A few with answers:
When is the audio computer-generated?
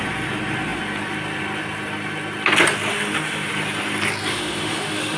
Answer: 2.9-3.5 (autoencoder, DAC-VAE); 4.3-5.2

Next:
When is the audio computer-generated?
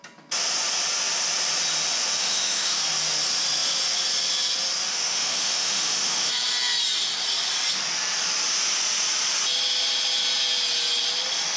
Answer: 2.2-2.8 (autoencoder, DAC-VAE); 4.9-6.3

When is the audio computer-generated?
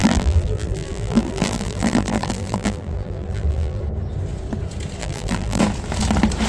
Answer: 0.0-3.8 (vocoder, BigVGAN v2); 5.0-5.6